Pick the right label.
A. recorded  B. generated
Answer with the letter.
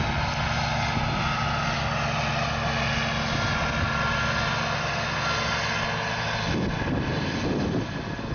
A